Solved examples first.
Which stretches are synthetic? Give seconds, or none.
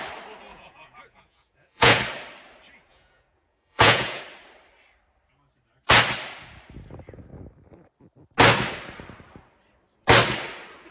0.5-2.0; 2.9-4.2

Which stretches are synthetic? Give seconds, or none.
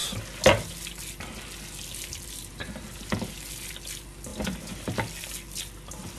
none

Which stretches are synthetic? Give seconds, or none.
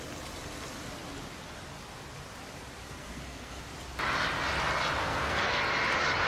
2.8-3.6; 5.0-5.6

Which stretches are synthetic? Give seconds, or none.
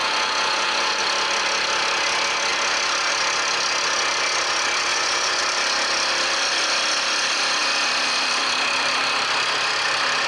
0.0-1.0; 4.9-5.4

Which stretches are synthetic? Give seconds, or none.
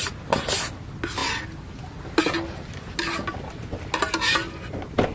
none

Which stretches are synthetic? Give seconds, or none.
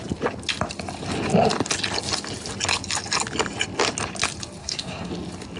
4.6-5.1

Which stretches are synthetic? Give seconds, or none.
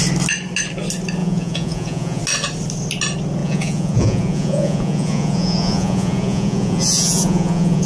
1.2-2.2; 3.4-7.9